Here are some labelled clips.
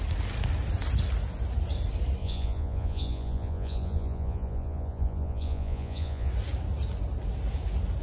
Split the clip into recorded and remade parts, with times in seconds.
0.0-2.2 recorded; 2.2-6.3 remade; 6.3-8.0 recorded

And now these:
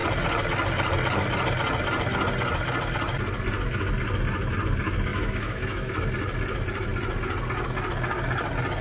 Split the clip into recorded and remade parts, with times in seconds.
0.0-5.1 recorded; 5.1-5.9 remade; 5.9-8.8 recorded

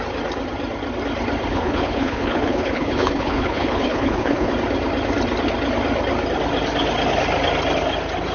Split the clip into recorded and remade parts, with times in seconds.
0.0-1.5 recorded; 1.5-4.5 remade; 4.5-8.3 recorded

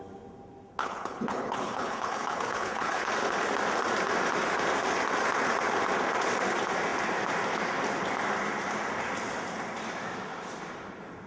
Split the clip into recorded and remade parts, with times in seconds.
0.0-0.8 recorded; 0.8-3.1 remade; 3.1-11.3 recorded

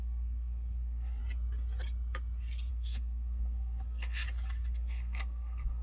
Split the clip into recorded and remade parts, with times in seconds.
0.0-1.2 remade; 1.2-2.7 recorded; 2.7-4.2 remade; 4.2-4.7 recorded; 4.7-5.8 remade

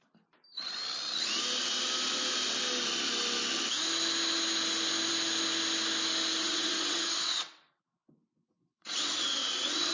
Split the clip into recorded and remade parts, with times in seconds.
0.0-6.4 recorded; 6.4-9.9 remade

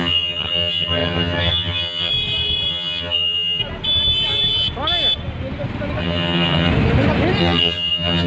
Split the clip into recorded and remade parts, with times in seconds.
0.0-2.1 remade; 2.1-2.7 recorded; 2.7-3.6 remade; 3.6-6.0 recorded; 6.0-6.7 remade; 6.7-7.4 recorded; 7.4-8.3 remade